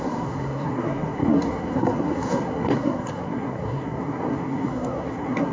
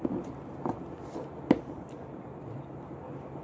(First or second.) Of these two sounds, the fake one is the first